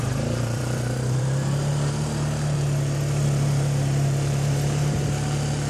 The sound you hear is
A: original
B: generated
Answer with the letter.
B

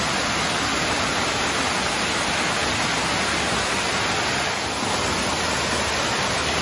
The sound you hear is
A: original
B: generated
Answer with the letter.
A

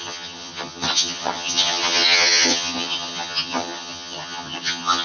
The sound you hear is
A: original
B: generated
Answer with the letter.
B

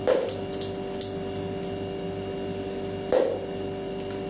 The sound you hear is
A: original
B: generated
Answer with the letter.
A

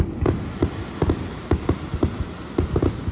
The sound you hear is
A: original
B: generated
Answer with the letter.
A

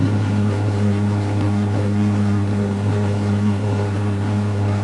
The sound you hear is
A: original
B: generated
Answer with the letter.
B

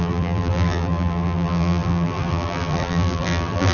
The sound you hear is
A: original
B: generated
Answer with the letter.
B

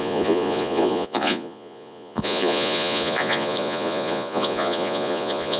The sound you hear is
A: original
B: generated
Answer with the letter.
B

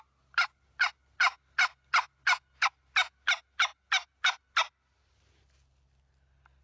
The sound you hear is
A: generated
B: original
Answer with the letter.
B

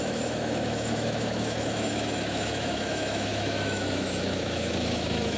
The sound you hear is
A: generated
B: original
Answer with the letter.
A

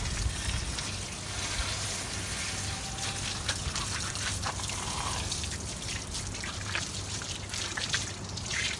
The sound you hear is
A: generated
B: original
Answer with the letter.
B